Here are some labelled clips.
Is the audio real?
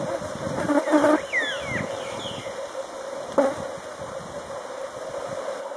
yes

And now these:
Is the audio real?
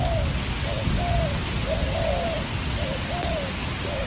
yes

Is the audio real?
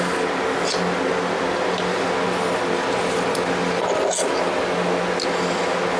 yes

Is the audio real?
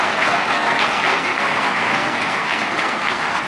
no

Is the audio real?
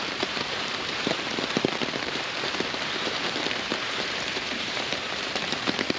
no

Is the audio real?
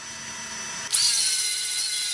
yes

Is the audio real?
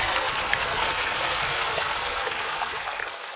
no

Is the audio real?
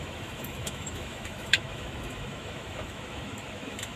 no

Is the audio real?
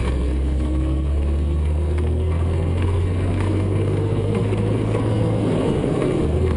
no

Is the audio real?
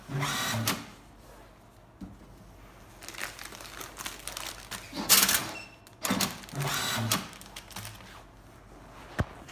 yes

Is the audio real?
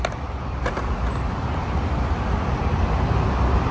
yes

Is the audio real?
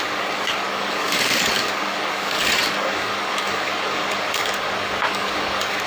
no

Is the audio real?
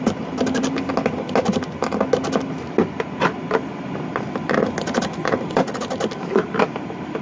yes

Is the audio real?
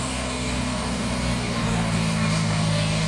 no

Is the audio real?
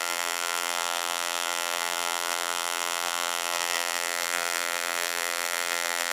no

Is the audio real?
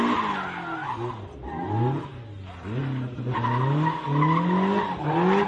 yes